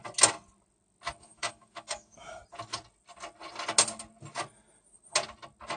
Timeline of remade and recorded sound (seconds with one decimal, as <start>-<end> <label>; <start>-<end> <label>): 0.0-1.2 recorded; 1.2-2.4 remade; 2.4-5.8 recorded